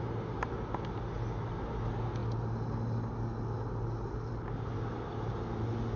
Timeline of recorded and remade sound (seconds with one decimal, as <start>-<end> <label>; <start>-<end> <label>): 0.0-6.0 recorded